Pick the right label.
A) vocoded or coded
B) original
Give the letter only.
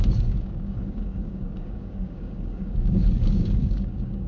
A